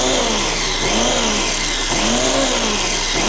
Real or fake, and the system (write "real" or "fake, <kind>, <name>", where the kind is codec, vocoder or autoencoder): real